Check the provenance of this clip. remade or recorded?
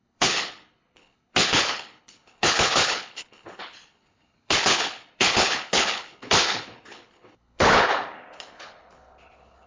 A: remade